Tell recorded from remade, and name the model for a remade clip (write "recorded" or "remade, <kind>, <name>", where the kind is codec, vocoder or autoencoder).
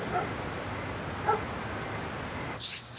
recorded